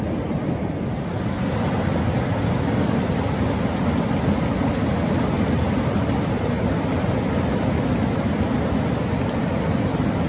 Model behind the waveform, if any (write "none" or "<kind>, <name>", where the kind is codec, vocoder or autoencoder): none